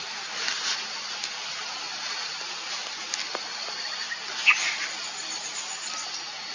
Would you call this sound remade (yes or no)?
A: no